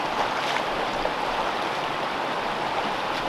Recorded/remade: recorded